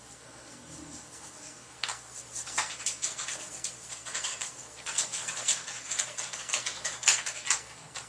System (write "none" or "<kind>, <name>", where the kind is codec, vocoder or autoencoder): codec, SNAC